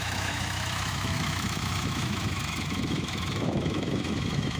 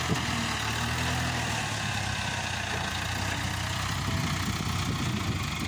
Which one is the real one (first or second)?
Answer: second